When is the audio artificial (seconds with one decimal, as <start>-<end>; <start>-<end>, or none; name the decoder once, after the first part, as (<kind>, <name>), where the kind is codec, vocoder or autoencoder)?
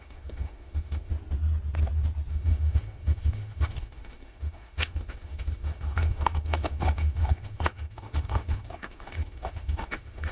0.0-1.1 (autoencoder, DAC-VAE); 2.3-10.3